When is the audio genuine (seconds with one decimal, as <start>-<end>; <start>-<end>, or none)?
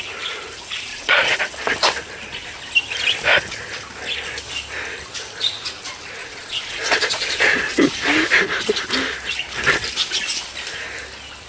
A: 0.0-0.9; 1.4-6.2; 7.8-11.5